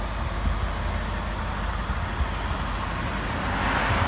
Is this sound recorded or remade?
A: recorded